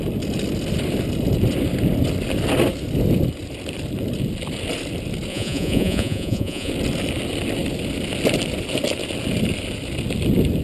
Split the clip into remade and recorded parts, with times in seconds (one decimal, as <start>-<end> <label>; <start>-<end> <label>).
0.0-5.3 recorded; 5.3-6.7 remade; 6.7-10.6 recorded